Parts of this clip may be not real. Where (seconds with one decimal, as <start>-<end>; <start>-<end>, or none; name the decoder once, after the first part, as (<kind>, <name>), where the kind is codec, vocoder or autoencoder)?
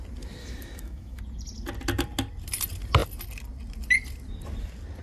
0.4-1.2 (autoencoder, DAC-VAE)